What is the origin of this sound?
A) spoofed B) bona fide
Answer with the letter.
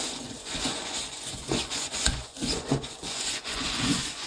A